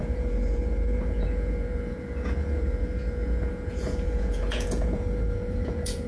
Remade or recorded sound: remade